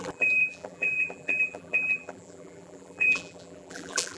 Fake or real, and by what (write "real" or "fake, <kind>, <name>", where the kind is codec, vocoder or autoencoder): fake, vocoder, BigVGAN v2